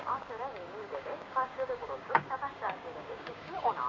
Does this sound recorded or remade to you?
remade